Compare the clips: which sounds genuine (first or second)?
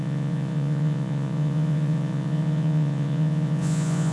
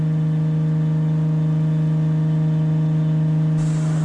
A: second